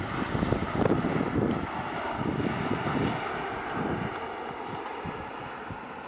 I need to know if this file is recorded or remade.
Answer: recorded